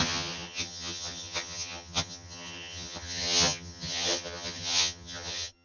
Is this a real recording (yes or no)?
no